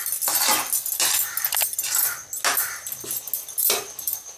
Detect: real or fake real